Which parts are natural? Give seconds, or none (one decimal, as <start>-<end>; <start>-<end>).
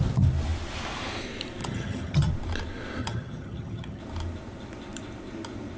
0.0-1.6; 2.3-3.0; 4.0-5.8